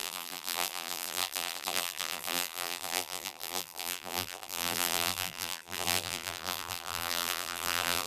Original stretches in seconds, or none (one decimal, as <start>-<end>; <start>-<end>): none